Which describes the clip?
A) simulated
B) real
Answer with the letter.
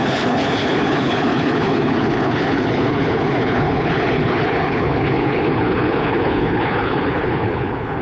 A